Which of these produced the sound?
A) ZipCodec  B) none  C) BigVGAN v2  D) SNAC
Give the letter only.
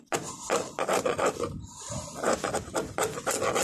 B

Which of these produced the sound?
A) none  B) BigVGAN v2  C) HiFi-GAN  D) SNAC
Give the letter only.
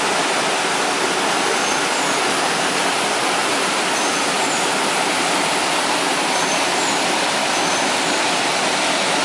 A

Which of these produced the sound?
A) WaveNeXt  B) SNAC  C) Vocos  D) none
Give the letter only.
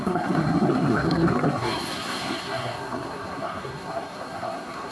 B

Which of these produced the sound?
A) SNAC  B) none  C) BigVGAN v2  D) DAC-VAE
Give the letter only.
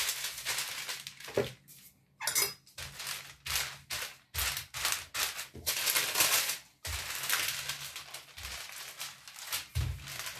B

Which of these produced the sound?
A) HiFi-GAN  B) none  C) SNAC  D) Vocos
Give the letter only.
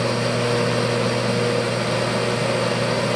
B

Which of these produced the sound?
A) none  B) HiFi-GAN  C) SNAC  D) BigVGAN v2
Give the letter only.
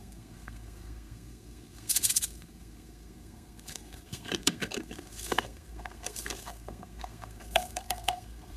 C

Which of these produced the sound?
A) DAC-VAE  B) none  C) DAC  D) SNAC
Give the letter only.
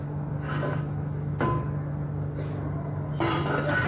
B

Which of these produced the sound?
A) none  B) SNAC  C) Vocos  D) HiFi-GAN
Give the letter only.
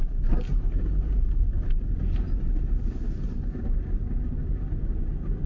A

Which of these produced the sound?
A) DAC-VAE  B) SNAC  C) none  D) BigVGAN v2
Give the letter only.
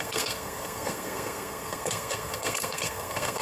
B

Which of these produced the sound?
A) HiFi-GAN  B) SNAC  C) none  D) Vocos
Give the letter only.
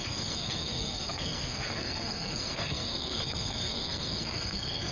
B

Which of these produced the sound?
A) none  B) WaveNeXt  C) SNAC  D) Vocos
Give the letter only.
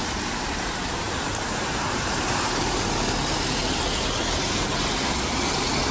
A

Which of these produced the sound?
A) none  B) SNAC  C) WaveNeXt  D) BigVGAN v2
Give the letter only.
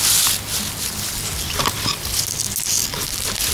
A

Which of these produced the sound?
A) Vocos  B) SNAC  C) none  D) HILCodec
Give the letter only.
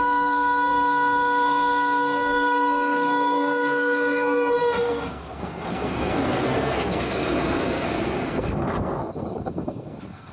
B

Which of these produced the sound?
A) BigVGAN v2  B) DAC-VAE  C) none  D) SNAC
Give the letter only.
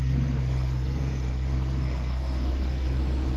D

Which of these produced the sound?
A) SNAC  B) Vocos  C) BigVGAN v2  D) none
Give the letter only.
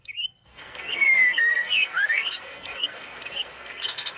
A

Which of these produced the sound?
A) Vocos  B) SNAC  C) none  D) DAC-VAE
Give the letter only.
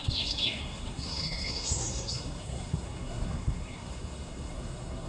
B